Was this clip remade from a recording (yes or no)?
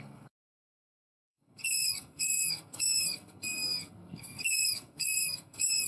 yes